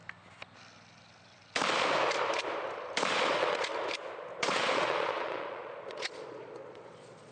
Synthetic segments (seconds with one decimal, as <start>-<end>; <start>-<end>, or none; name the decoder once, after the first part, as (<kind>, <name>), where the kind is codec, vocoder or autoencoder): 3.1-3.7 (vocoder, Vocos); 4.4-7.3